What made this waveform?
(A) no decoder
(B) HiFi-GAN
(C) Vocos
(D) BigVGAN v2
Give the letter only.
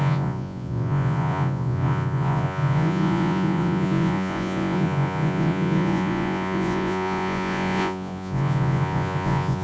C